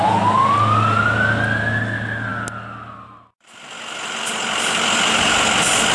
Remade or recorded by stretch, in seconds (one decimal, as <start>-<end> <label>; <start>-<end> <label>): 0.0-5.9 recorded